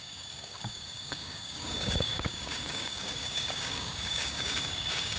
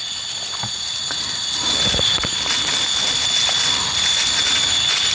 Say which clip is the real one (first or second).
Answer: second